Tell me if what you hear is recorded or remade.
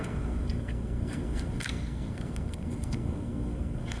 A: remade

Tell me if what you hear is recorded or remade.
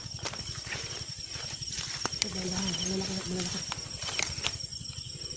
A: recorded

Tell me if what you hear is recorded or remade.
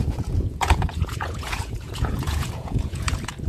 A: remade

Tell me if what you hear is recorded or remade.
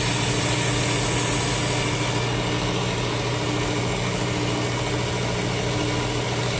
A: recorded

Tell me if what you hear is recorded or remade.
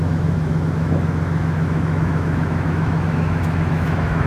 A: remade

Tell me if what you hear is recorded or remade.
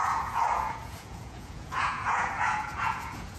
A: remade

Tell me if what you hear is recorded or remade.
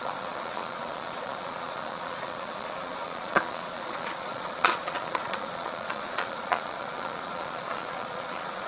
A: remade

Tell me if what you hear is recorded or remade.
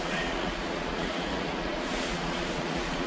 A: remade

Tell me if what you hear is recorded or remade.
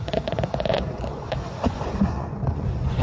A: remade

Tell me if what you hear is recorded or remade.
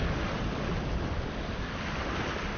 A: recorded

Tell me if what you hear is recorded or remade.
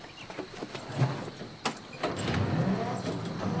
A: recorded